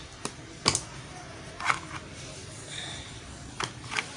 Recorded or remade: recorded